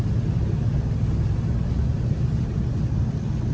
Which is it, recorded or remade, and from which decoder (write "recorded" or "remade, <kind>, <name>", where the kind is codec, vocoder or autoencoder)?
recorded